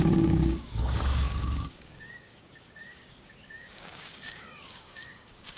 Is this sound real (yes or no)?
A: no